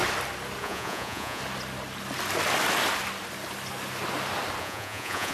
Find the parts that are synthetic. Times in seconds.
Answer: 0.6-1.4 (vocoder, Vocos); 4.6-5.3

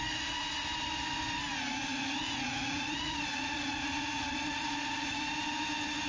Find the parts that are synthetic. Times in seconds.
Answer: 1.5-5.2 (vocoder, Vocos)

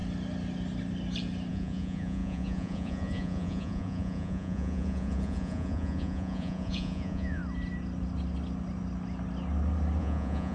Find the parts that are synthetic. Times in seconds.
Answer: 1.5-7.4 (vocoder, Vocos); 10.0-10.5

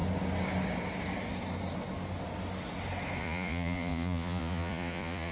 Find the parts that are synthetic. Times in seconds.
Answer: 3.2-5.3 (vocoder, Vocos)